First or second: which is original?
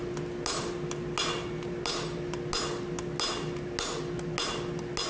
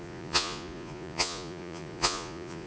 first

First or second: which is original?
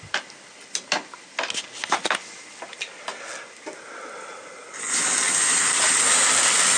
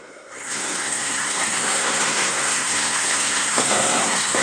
first